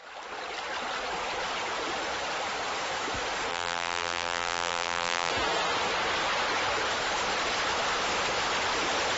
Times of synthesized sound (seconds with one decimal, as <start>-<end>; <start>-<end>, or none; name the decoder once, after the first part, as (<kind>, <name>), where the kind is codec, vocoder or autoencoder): 3.5-5.3 (vocoder, BigVGAN v2)